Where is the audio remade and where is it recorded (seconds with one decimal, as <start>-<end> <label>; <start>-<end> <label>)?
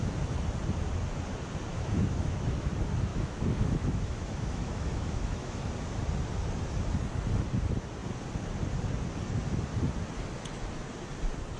0.0-1.7 recorded; 1.7-2.7 remade; 2.7-3.1 recorded; 3.1-5.6 remade; 5.6-11.6 recorded